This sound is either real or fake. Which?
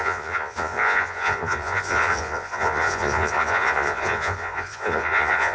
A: fake